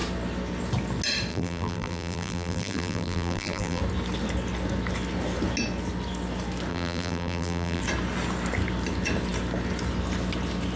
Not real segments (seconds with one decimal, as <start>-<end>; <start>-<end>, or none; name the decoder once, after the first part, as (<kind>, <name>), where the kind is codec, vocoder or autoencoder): 1.3-3.8 (vocoder, BigVGAN v2); 6.7-7.8